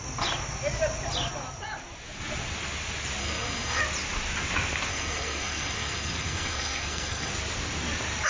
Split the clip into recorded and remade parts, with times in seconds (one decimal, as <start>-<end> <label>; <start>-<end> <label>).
0.0-3.2 recorded; 3.2-3.8 remade; 3.8-4.9 recorded; 4.9-7.3 remade; 7.3-8.3 recorded